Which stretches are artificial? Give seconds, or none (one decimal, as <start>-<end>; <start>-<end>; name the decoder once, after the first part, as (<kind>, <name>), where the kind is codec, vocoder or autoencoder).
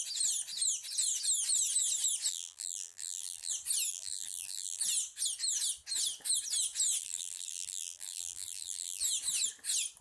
2.3-3.5 (vocoder, BigVGAN v2); 3.9-4.8; 7.0-9.0